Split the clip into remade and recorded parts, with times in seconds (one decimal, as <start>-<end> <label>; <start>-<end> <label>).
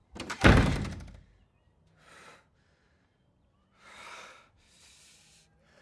0.0-2.4 remade; 2.4-5.8 recorded